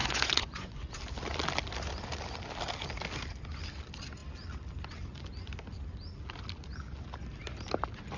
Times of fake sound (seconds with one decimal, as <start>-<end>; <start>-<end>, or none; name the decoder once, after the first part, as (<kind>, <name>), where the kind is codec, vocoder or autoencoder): 0.0-0.9 (vocoder, Vocos)